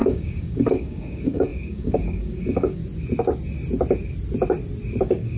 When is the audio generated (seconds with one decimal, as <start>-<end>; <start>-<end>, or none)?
0.0-2.8; 5.0-5.4

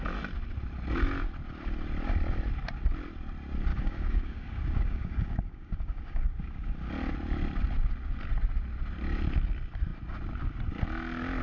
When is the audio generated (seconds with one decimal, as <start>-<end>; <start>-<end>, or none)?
3.7-6.9

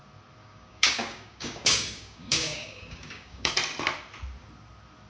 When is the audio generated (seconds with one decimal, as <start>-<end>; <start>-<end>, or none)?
0.4-3.5

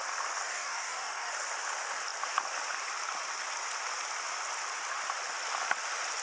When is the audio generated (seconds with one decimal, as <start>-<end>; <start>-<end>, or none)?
0.5-1.3

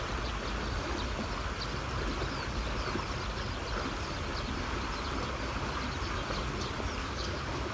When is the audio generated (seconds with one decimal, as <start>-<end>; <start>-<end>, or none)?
7.0-7.7